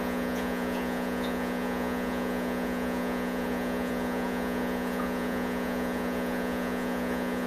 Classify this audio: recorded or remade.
remade